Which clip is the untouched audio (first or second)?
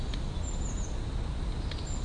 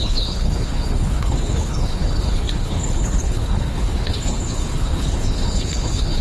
first